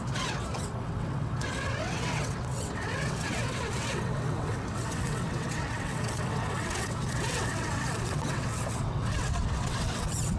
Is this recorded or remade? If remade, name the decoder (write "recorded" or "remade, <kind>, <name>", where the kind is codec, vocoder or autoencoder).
remade, vocoder, WaveNeXt